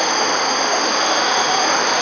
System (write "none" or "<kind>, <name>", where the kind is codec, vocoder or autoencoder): autoencoder, DAC-VAE